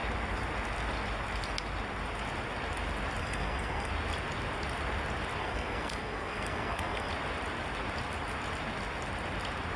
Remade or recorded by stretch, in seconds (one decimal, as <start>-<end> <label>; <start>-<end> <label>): 0.0-3.2 recorded; 3.2-3.9 remade; 3.9-5.4 recorded; 5.4-7.1 remade; 7.1-9.8 recorded